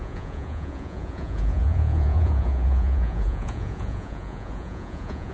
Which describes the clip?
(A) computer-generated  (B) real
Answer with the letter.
A